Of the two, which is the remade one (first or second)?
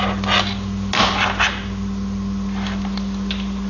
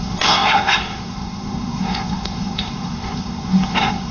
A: second